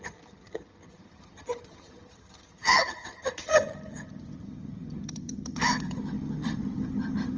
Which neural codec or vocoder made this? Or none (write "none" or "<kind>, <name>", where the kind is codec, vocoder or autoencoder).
vocoder, HiFi-GAN